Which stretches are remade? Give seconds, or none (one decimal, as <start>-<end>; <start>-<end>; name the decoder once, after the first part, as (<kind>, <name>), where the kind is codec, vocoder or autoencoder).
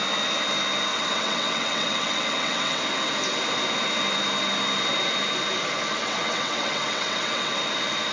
0.9-2.8 (vocoder, WaveNeXt); 6.0-7.6